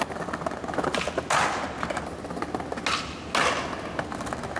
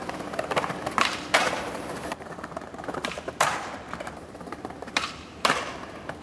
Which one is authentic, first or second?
first